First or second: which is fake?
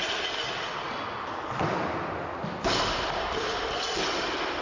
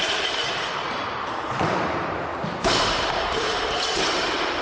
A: second